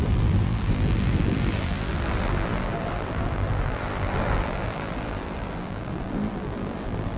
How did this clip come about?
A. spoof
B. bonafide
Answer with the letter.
A